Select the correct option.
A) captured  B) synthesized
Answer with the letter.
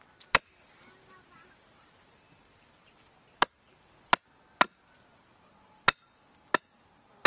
A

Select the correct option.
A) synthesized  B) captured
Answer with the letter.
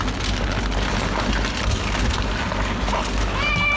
B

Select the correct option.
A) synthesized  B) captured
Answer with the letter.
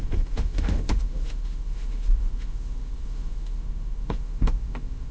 A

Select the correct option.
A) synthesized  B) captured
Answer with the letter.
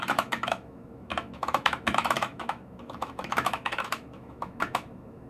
A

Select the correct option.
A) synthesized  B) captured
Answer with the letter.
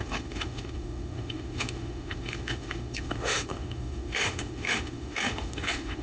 A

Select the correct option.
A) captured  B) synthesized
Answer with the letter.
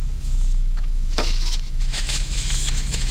B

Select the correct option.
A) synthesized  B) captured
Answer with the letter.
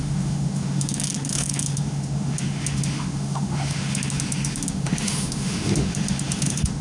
A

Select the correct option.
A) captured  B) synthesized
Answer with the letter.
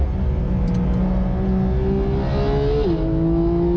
A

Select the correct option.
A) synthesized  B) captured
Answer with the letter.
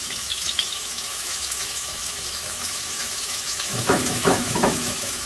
A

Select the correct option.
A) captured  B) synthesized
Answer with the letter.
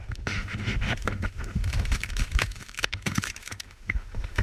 B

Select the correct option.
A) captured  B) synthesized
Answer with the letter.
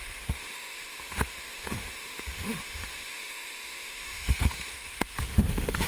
B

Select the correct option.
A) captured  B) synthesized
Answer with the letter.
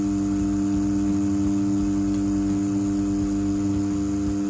A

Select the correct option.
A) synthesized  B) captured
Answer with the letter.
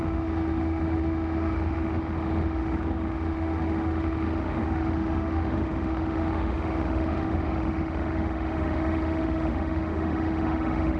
A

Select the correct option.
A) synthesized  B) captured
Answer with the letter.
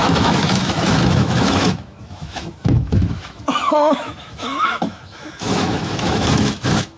A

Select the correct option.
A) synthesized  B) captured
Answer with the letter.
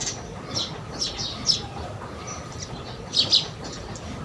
B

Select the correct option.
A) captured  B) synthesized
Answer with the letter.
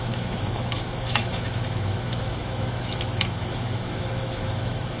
B